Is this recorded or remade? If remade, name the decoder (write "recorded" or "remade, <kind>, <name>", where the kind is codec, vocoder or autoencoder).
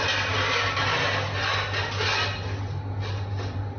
recorded